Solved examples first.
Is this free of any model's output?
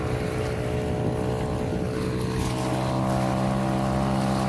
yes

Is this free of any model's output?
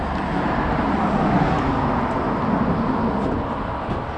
yes